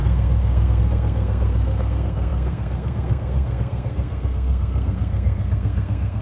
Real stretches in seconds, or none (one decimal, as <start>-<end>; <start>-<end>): none